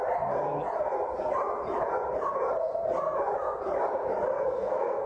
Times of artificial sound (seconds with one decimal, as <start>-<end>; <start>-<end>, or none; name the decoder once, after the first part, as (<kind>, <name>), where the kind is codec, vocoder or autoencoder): 4.3-5.1 (codec, SNAC)